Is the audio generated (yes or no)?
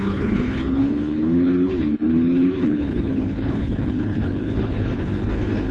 yes